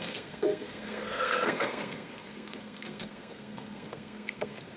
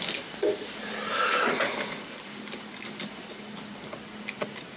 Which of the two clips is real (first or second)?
second